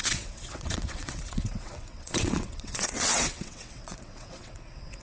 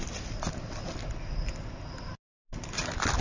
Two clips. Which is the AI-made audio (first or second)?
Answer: first